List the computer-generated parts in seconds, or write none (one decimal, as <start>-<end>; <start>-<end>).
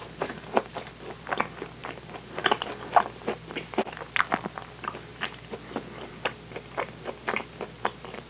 0.0-0.9; 1.8-2.7